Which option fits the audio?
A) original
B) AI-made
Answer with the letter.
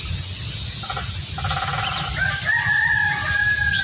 A